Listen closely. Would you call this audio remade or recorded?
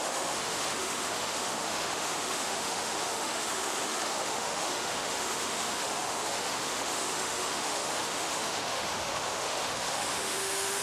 remade